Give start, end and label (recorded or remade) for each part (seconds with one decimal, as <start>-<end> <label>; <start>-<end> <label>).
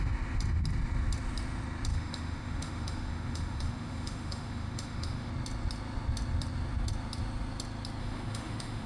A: 0.0-1.9 recorded; 1.9-5.3 remade; 5.3-8.0 recorded; 8.0-8.9 remade